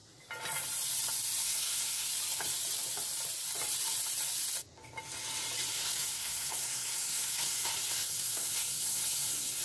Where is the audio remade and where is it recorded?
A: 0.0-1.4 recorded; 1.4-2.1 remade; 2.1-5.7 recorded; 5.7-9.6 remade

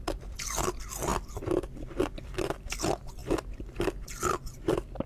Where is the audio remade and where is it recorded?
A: 0.0-1.1 remade; 1.1-2.2 recorded; 2.2-3.2 remade; 3.2-4.3 recorded; 4.3-5.1 remade

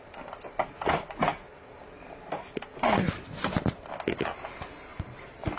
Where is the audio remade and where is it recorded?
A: 0.0-5.6 recorded

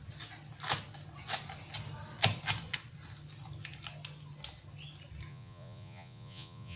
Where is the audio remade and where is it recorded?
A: 0.0-5.3 recorded; 5.3-6.8 remade

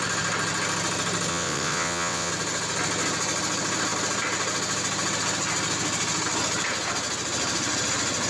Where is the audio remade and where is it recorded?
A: 0.0-1.3 recorded; 1.3-2.3 remade; 2.3-8.3 recorded

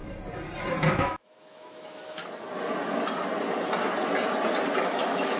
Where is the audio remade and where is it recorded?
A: 0.0-0.9 recorded; 0.9-2.2 remade; 2.2-4.8 recorded; 4.8-5.4 remade

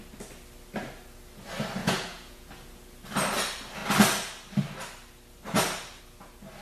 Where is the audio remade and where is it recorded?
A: 0.0-1.8 recorded; 1.8-2.5 remade; 2.5-6.6 recorded